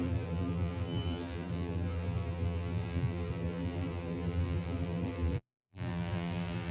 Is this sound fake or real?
fake